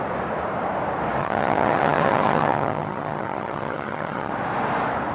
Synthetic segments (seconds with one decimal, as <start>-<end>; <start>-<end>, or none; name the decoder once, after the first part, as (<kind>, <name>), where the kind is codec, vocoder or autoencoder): 1.2-4.3 (vocoder, HiFi-GAN)